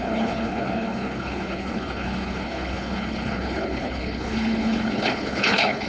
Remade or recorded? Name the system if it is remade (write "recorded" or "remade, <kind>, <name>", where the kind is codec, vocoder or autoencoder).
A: remade, codec, HILCodec